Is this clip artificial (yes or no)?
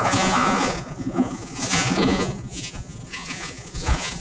yes